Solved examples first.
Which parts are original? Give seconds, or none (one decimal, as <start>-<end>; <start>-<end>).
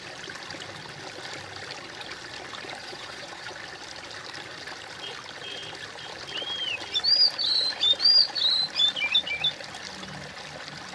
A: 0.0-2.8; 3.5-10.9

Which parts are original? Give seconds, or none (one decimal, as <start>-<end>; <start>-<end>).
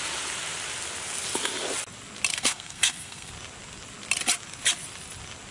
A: 0.0-2.3; 3.3-5.5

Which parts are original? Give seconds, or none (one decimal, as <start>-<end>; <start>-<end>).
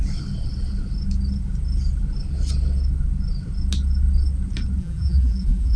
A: 0.0-4.8